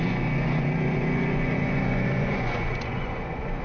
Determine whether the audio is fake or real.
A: fake